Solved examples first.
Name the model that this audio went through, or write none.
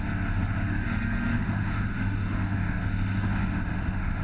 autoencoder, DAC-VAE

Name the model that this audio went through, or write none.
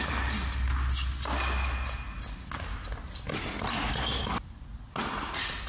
none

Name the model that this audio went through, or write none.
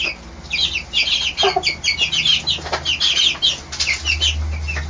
none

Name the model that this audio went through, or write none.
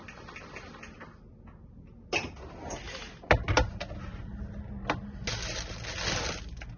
none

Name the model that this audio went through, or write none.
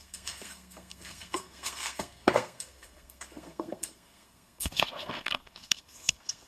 codec, SNAC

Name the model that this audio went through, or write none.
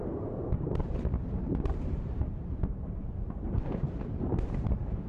vocoder, BigVGAN v2